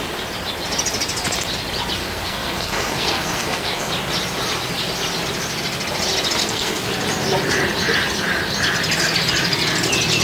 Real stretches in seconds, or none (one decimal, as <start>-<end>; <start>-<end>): 0.0-2.0; 3.9-6.4; 6.9-10.2